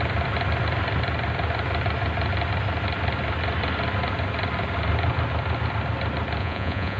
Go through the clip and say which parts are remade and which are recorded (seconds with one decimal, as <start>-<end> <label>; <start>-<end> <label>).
0.0-6.4 recorded; 6.4-7.0 remade